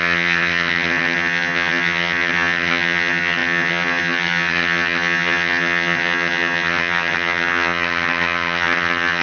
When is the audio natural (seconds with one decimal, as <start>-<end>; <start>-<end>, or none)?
none